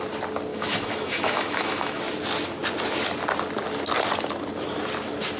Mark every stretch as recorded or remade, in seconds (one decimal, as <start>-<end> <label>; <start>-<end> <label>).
0.0-0.5 recorded; 0.5-2.0 remade; 2.0-5.4 recorded